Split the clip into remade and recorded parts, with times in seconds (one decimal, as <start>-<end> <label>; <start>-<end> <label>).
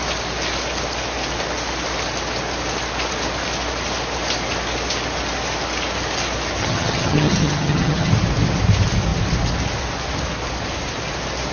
0.0-6.6 recorded; 6.6-8.1 remade; 8.1-11.5 recorded